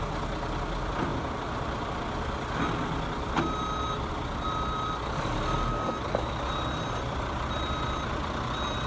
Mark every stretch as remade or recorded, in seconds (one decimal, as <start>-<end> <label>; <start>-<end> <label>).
0.0-8.9 recorded